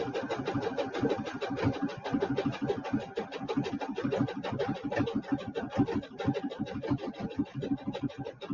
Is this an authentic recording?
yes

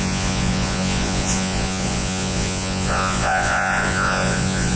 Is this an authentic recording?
no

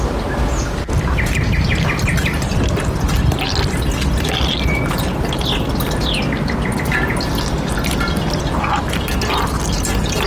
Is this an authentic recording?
yes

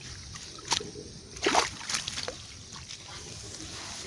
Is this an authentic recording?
yes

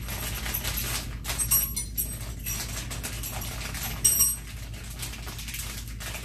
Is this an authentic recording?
yes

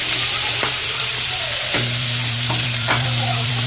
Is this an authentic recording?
no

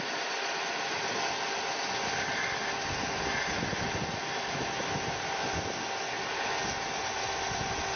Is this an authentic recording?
yes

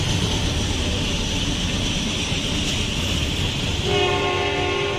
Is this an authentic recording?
yes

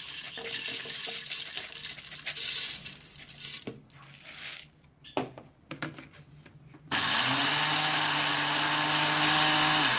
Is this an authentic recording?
yes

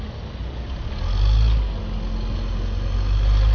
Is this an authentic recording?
yes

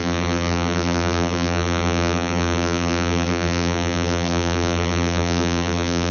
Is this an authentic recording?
no